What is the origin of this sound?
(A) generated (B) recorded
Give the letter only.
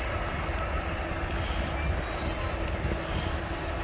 B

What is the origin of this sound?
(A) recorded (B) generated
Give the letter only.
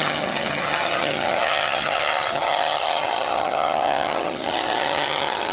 B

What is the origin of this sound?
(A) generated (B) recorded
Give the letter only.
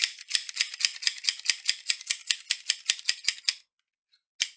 B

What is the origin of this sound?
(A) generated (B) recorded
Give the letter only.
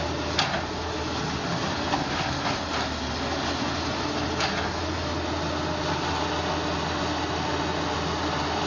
B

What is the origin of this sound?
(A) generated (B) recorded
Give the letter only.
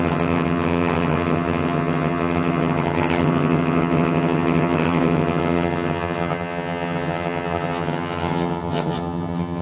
A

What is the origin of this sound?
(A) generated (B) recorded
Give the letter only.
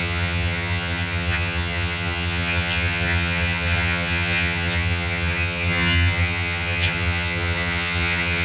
A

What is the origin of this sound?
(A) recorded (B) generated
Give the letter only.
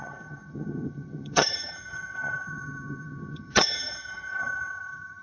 B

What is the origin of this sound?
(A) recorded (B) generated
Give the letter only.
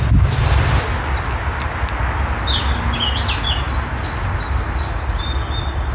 A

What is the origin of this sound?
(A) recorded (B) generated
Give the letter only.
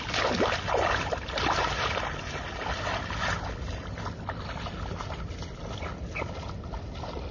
A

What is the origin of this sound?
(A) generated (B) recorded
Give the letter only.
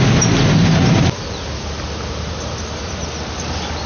B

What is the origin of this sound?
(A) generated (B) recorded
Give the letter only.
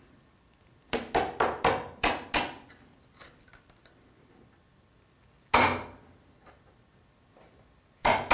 B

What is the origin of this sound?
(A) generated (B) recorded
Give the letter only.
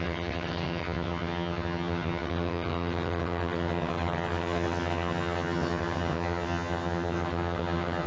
A